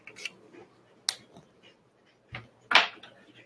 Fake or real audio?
real